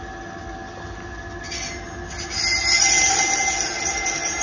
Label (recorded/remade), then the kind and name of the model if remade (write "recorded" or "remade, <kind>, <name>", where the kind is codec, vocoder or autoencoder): recorded